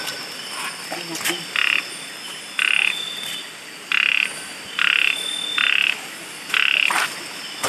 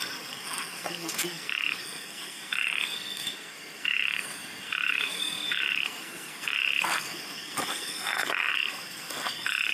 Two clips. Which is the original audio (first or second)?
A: first